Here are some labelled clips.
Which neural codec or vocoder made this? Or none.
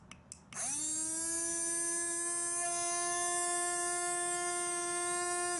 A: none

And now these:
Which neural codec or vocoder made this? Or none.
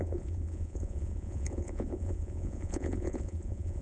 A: vocoder, Vocos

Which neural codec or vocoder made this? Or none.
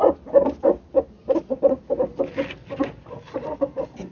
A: none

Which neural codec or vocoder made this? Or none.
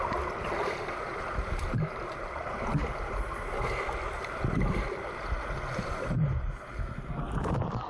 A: none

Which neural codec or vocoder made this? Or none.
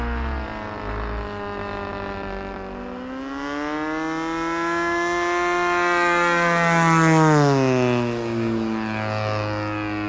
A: none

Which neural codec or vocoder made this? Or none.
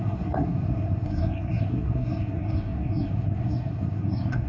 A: codec, SNAC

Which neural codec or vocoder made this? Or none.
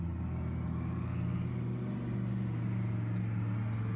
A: none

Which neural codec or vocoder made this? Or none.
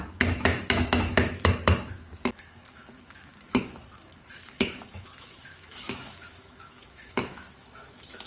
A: autoencoder, DAC-VAE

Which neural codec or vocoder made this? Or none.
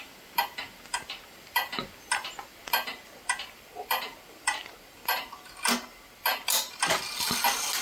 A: none